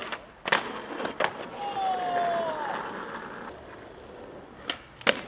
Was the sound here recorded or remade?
recorded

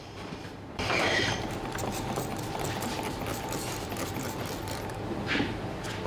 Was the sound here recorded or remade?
remade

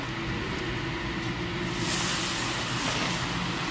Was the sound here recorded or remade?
recorded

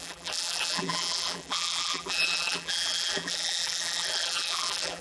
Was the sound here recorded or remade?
remade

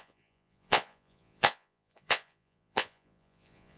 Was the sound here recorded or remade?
remade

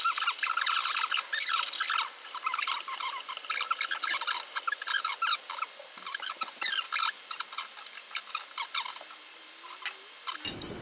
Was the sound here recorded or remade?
remade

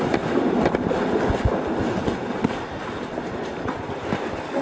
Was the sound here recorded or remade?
recorded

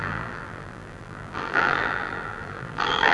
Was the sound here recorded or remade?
remade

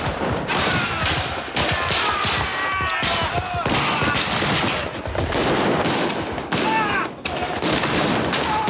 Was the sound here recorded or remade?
recorded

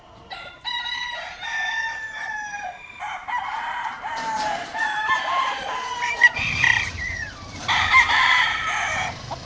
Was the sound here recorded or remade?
remade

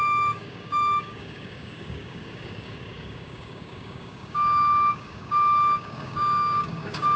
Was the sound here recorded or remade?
remade